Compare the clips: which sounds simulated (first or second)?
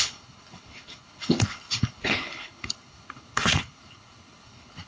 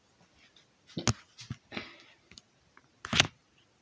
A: first